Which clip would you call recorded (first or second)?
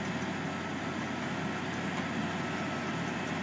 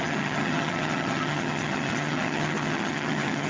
first